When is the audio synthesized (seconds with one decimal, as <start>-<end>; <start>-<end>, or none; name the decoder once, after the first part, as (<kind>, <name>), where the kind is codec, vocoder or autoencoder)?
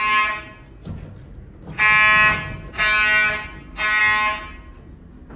none